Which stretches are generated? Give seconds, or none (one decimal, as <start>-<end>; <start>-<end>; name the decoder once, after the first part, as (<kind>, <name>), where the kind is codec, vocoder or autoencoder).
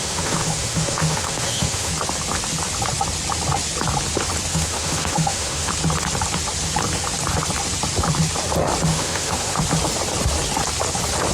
0.0-1.9 (autoencoder, DAC-VAE); 4.5-5.7; 8.9-9.6